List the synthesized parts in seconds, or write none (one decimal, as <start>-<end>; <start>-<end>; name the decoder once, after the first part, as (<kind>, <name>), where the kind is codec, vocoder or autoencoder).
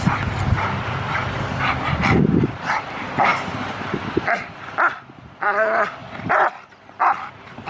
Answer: 0.0-1.2 (vocoder, BigVGAN v2); 1.9-6.0